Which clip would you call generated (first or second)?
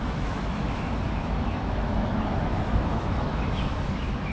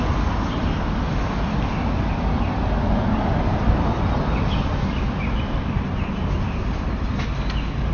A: first